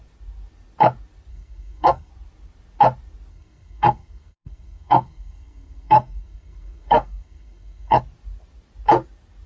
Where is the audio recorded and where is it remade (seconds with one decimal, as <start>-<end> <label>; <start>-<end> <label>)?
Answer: 0.0-1.3 recorded; 1.3-2.1 remade; 2.1-3.3 recorded; 3.3-8.0 remade; 8.0-9.5 recorded